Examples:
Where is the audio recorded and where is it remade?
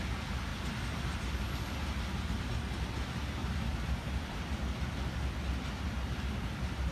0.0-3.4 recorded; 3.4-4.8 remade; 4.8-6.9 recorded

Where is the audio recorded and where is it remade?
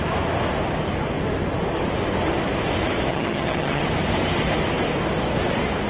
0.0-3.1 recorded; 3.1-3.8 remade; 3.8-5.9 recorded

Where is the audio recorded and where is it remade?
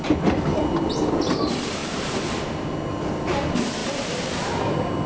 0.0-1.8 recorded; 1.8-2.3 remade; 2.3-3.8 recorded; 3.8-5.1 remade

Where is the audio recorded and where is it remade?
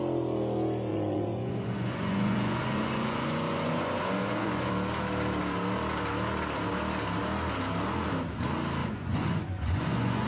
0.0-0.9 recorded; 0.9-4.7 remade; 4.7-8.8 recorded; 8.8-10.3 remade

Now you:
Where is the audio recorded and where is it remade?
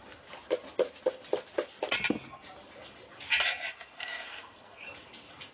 0.0-3.7 recorded; 3.7-4.8 remade; 4.8-5.5 recorded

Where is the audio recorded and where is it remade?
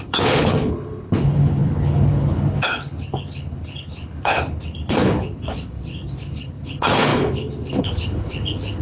0.0-8.8 remade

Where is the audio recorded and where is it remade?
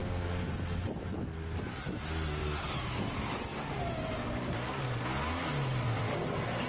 0.0-6.7 recorded